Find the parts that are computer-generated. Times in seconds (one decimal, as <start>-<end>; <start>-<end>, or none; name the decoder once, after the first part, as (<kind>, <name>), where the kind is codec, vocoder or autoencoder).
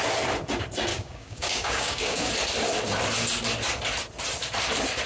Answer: 0.9-2.3 (codec, DAC)